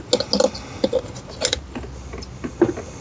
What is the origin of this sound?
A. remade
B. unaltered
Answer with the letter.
B